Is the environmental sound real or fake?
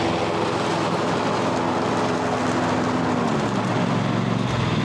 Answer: real